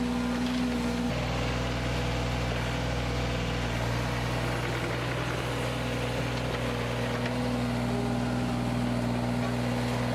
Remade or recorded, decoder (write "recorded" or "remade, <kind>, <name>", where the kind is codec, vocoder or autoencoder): recorded